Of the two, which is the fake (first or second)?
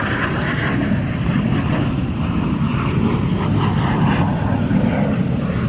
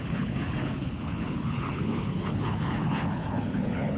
second